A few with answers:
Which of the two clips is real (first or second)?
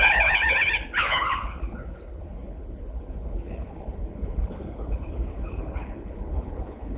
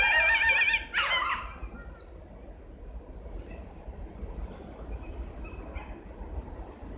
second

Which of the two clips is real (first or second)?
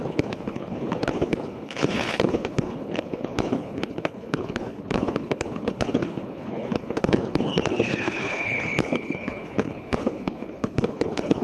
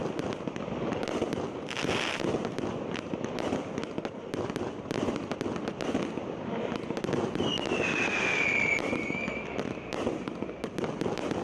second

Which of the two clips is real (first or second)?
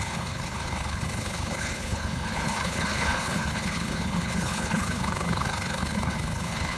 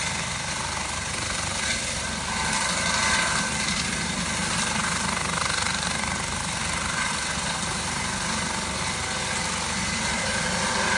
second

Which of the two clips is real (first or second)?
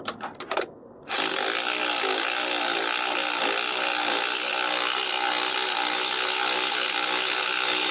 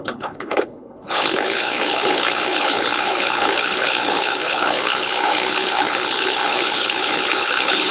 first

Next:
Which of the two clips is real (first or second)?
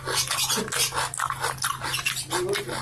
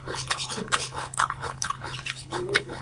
first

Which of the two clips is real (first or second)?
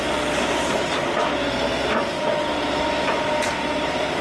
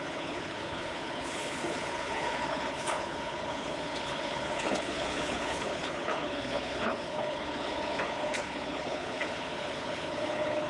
first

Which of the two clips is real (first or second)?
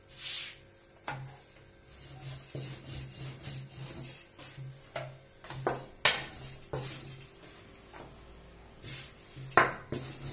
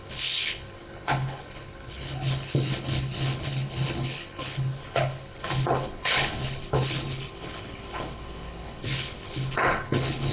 first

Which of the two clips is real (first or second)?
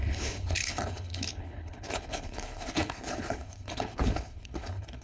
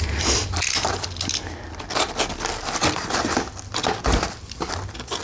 second